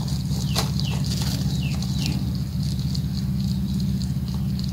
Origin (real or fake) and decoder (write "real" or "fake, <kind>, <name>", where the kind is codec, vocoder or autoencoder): real